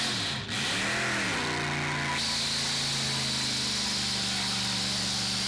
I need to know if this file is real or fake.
real